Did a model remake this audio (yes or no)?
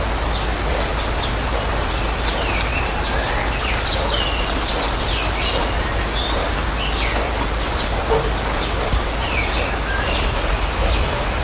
no